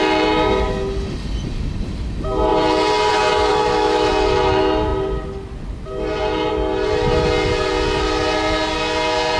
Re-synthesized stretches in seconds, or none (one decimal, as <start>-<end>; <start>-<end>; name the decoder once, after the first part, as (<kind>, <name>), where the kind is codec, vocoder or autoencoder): 3.5-4.1 (autoencoder, DAC-VAE)

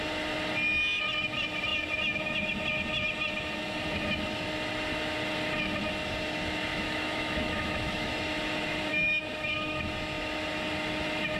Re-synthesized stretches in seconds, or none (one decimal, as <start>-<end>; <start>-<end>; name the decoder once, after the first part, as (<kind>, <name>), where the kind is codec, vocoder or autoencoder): 6.7-8.1 (autoencoder, DAC-VAE); 8.9-9.8

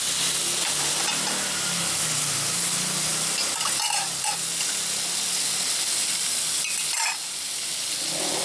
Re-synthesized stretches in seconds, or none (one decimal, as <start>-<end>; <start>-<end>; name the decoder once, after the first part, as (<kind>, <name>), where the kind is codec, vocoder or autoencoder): none

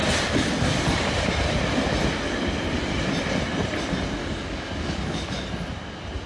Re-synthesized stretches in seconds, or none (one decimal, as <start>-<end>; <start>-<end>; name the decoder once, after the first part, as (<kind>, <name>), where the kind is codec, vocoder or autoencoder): 4.2-5.5 (codec, DAC)